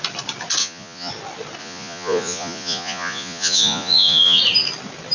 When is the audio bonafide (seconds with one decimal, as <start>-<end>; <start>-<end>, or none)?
0.0-0.6; 1.1-1.6; 4.4-5.1